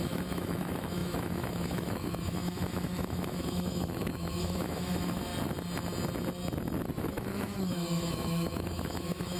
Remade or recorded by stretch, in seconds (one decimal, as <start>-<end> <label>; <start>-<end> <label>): 0.0-5.3 remade; 5.3-7.0 recorded; 7.0-9.4 remade

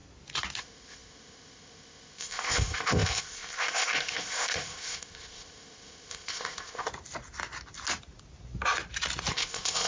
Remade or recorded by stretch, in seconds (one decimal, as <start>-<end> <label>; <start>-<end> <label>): 0.0-0.6 recorded; 0.6-6.9 remade; 6.9-9.3 recorded; 9.3-9.9 remade